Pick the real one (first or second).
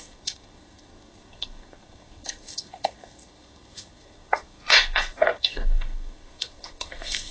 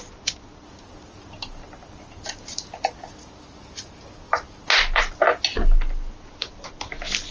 second